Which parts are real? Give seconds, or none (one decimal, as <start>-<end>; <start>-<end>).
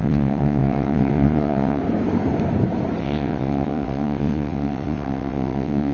1.8-3.0